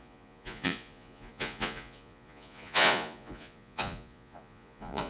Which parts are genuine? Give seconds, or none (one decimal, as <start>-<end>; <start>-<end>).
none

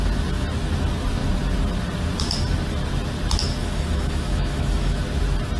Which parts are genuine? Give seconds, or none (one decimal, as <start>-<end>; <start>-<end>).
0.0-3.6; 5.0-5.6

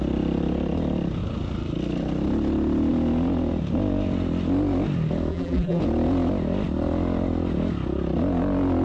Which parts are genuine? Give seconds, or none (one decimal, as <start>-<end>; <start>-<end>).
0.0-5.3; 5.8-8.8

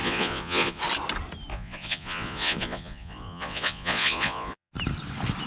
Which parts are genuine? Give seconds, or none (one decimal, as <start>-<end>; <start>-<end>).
0.8-1.5; 4.7-5.5